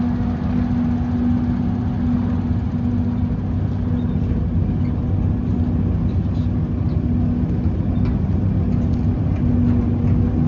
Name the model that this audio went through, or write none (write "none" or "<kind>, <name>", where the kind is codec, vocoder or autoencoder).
none